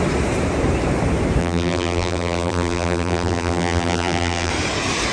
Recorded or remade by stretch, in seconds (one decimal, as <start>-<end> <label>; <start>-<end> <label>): 0.0-1.4 recorded; 1.4-4.5 remade; 4.5-5.1 recorded